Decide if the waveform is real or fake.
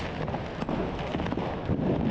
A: real